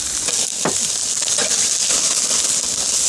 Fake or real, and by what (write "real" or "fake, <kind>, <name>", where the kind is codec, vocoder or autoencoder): real